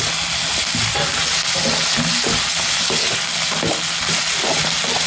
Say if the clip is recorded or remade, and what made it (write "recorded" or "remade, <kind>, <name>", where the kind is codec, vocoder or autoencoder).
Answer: recorded